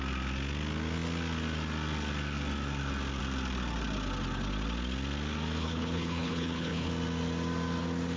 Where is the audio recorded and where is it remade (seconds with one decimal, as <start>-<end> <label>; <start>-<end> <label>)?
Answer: 0.0-5.6 recorded; 5.6-6.9 remade; 6.9-8.2 recorded